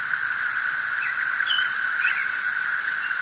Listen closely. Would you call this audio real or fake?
fake